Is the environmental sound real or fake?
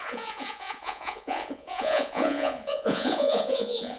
fake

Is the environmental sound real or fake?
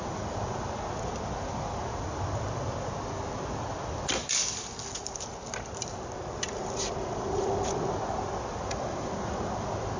real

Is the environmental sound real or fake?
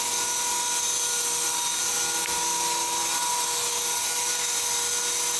real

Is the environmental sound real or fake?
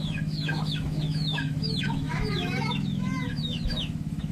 fake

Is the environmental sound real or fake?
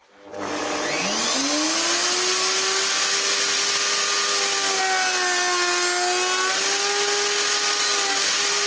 real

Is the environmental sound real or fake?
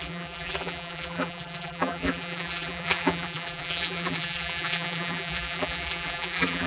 fake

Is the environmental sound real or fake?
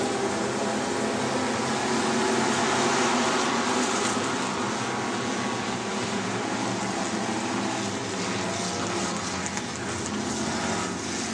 real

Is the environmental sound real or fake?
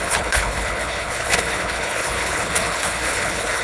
fake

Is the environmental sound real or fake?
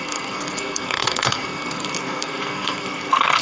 fake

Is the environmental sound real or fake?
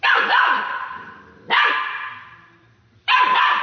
real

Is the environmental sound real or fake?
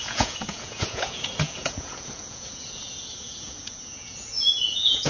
fake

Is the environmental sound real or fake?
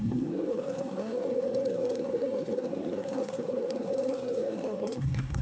fake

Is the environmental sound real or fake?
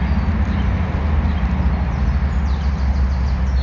real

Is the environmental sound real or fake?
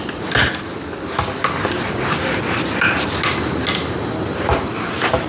real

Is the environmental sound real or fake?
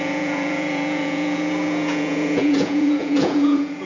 fake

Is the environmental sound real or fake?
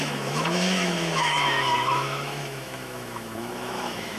fake